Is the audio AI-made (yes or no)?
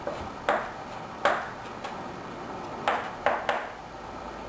no